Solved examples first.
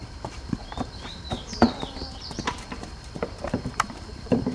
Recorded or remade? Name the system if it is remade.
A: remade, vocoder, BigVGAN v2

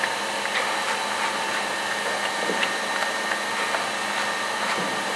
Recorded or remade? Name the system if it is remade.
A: recorded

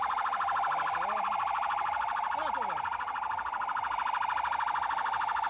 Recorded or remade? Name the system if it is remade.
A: recorded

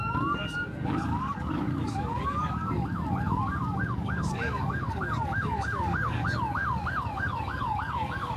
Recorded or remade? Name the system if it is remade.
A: remade, codec, DAC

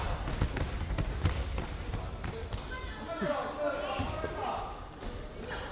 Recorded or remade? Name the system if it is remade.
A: recorded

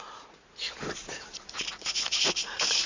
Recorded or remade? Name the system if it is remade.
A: remade, vocoder, Vocos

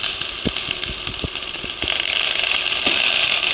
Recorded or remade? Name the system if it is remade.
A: recorded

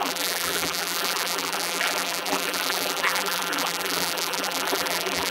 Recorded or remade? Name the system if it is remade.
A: remade, vocoder, BigVGAN v2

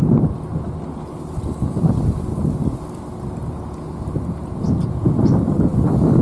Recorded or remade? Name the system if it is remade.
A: recorded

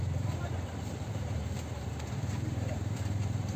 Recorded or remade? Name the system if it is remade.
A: remade, vocoder, BigVGAN v2